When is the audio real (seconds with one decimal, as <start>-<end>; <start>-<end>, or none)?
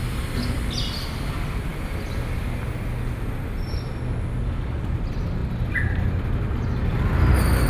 0.0-7.7